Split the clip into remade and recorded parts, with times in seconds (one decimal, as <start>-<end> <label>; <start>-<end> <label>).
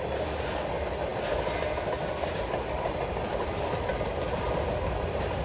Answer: 0.0-5.4 recorded